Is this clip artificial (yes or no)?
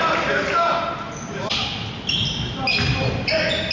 no